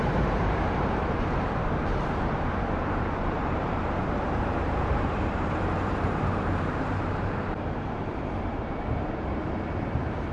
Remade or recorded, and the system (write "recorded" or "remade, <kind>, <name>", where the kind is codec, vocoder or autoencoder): remade, vocoder, BigVGAN v2